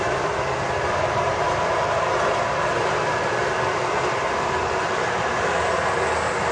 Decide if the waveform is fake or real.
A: real